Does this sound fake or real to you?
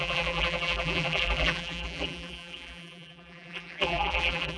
fake